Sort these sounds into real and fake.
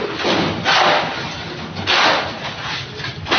real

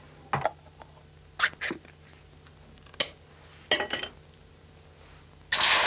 real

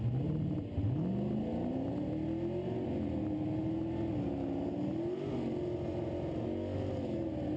real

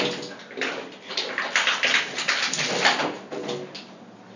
real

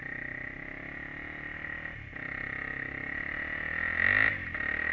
real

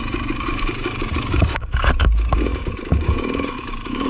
fake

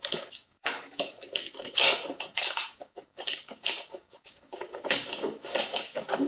fake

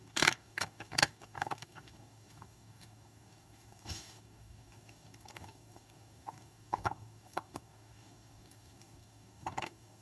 fake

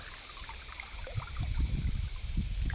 real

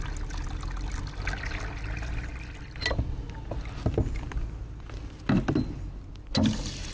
real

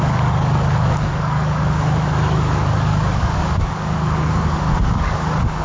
fake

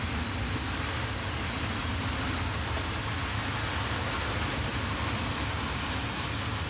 real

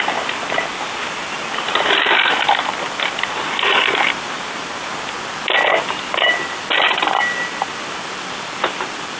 real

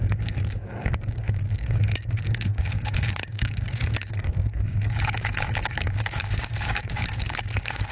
fake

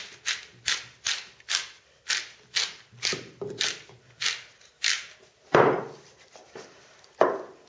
real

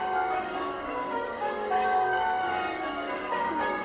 fake